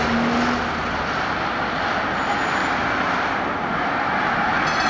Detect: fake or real real